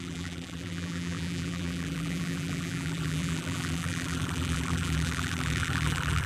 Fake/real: fake